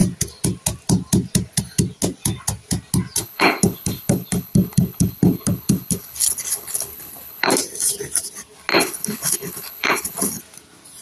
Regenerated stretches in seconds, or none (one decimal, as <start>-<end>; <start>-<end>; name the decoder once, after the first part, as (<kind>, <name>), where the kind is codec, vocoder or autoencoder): 3.2-7.5 (codec, HILCodec); 8.7-10.4